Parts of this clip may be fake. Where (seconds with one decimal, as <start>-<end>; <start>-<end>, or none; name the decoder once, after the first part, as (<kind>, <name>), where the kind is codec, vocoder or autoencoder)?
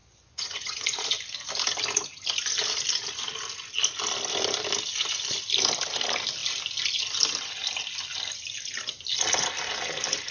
0.0-1.0 (vocoder, Vocos)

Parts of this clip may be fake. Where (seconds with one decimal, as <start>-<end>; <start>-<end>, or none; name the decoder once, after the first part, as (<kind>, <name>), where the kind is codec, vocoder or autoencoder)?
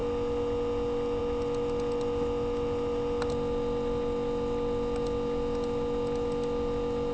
none